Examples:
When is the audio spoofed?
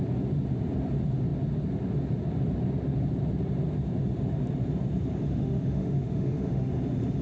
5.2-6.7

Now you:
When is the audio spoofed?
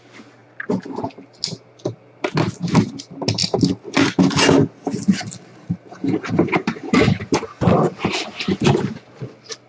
none